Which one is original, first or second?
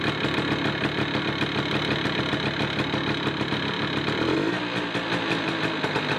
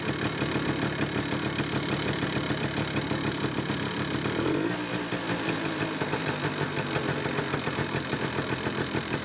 first